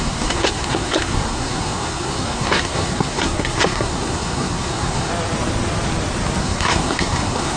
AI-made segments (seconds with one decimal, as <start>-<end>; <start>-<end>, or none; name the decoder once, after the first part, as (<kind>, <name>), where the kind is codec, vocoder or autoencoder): 0.0-5.1 (codec, SNAC); 6.4-7.6